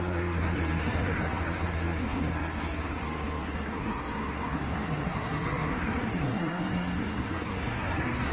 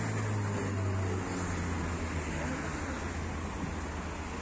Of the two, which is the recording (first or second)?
second